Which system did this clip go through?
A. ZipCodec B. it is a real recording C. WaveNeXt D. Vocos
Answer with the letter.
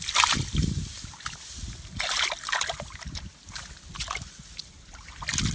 B